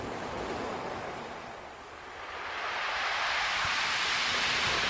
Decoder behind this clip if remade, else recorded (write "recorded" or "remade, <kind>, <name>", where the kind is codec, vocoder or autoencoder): recorded